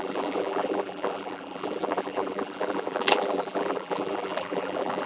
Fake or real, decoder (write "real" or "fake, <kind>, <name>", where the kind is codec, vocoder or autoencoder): fake, vocoder, BigVGAN v2